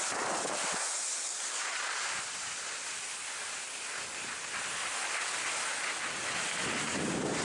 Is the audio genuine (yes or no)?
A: yes